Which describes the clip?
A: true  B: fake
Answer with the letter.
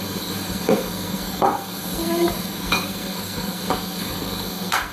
B